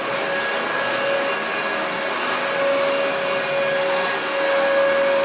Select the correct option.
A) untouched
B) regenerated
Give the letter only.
A